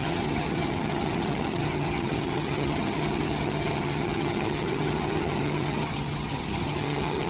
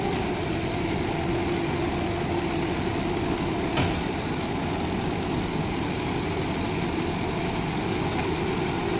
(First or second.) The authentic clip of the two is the second